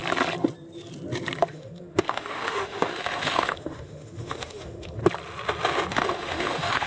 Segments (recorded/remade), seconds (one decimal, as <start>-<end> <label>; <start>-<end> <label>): 0.0-1.5 recorded; 1.5-5.0 remade; 5.0-5.9 recorded; 5.9-6.9 remade